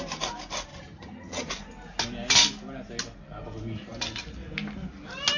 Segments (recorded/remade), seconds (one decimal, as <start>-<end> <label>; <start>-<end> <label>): 0.0-0.7 recorded; 0.7-1.5 remade; 1.5-5.4 recorded